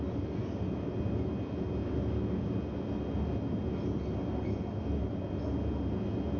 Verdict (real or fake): real